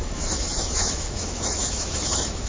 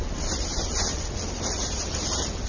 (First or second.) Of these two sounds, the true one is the second